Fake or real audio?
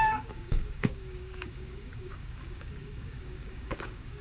fake